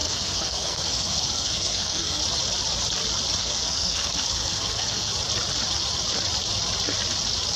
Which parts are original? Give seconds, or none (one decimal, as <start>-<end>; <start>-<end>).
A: 2.2-3.4; 5.1-7.6